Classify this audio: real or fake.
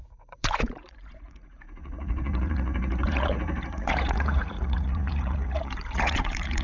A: fake